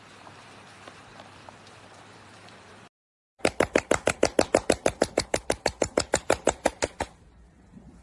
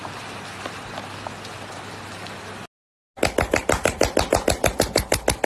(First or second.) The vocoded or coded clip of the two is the first